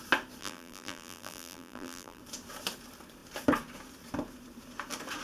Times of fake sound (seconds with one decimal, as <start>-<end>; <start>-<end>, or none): 0.4-2.2